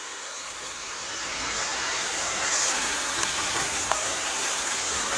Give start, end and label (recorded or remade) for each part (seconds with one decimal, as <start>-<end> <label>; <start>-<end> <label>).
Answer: 0.0-5.2 remade